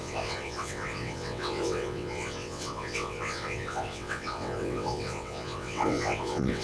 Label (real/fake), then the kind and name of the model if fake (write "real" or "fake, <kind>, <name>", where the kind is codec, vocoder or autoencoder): fake, vocoder, WaveNeXt